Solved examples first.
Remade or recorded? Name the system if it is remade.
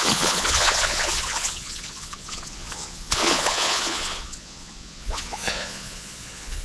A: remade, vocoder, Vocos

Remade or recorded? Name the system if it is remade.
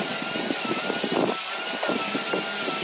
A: recorded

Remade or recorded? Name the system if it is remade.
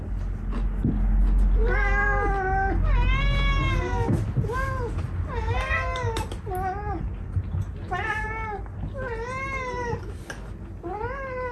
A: recorded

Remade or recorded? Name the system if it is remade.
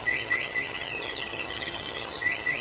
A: remade, vocoder, HiFi-GAN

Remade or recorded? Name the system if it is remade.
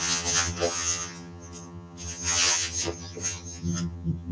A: remade, vocoder, HiFi-GAN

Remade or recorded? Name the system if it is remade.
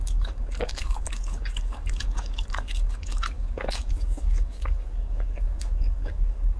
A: remade, codec, DAC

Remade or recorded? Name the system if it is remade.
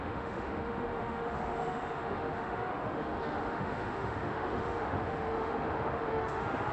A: remade, autoencoder, DAC-VAE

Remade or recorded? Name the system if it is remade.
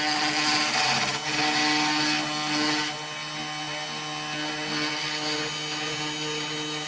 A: recorded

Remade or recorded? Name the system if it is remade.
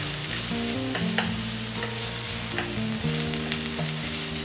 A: recorded